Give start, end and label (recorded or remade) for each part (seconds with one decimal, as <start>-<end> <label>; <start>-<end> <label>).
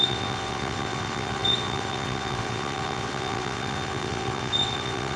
0.0-5.2 remade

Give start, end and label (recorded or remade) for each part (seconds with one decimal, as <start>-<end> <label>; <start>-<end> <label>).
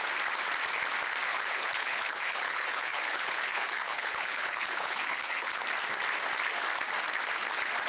0.0-1.3 recorded; 1.3-5.6 remade; 5.6-7.9 recorded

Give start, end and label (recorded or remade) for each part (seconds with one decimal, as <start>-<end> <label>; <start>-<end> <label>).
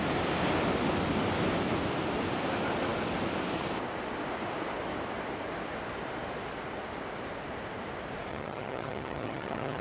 0.0-8.3 recorded; 8.3-9.8 remade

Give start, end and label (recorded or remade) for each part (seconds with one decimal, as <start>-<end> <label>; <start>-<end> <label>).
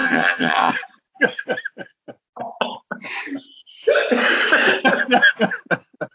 0.0-0.7 remade; 0.7-6.1 recorded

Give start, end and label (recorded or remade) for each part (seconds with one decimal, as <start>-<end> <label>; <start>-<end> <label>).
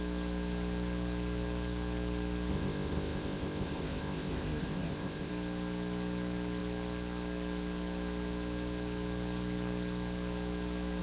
0.0-2.5 recorded; 2.5-5.3 remade; 5.3-11.0 recorded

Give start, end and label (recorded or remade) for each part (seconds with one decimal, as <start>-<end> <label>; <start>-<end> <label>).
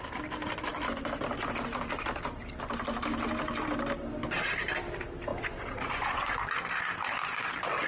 0.0-5.3 recorded; 5.3-6.3 remade; 6.3-7.9 recorded